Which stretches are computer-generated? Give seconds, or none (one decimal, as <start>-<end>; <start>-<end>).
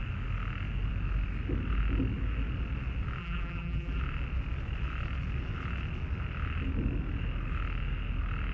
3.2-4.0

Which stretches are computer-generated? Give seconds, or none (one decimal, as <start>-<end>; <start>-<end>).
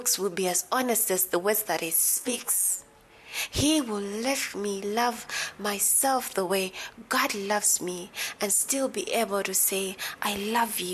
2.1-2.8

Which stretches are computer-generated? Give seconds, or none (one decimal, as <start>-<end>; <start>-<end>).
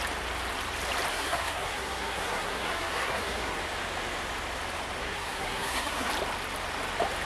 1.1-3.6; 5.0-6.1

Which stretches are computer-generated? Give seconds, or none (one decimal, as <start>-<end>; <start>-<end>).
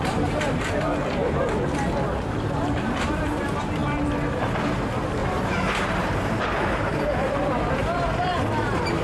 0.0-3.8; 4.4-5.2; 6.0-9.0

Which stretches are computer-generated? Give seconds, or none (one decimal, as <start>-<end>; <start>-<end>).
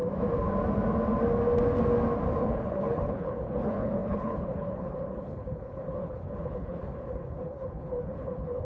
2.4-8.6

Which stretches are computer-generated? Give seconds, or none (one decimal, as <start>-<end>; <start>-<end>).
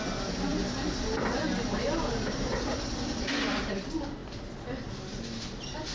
none